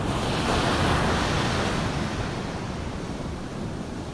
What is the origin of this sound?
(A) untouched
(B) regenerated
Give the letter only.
A